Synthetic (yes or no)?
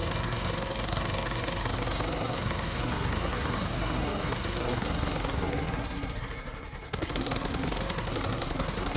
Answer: yes